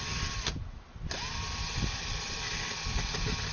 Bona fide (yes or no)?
yes